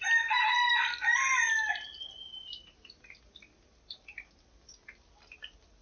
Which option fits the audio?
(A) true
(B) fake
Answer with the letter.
A